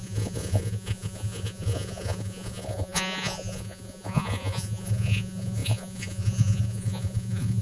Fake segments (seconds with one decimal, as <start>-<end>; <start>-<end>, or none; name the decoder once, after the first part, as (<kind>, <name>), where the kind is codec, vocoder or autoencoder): 0.0-7.6 (vocoder, Vocos)